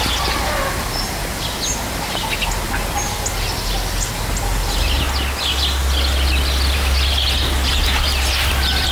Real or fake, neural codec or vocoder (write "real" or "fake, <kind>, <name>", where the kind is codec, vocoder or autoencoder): real